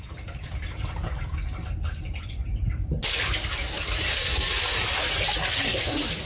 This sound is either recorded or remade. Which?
recorded